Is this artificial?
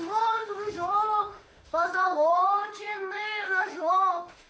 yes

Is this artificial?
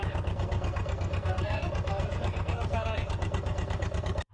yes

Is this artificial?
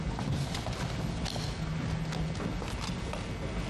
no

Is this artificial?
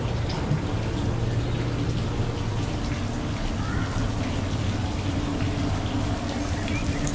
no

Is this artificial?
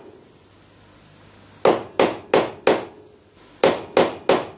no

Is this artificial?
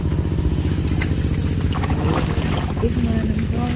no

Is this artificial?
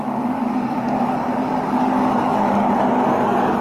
yes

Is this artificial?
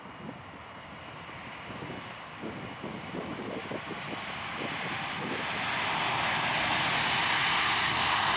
no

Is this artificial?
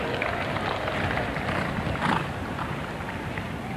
no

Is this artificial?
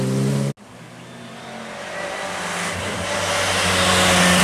no